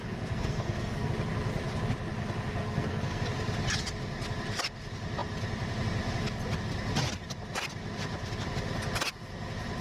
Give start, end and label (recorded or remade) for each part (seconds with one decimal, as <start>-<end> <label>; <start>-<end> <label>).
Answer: 0.0-1.1 remade; 1.1-2.6 recorded; 2.6-3.2 remade; 3.2-9.8 recorded